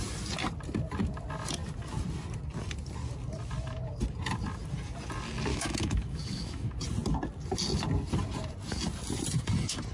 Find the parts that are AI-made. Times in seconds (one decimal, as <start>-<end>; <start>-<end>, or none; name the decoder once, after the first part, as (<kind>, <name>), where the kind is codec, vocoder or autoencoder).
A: 5.5-6.7 (autoencoder, DAC-VAE)